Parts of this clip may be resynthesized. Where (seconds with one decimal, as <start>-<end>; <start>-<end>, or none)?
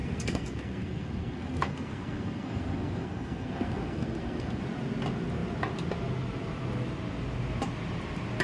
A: 0.0-4.6